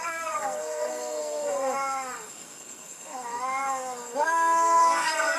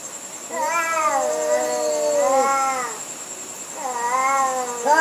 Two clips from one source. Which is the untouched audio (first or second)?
second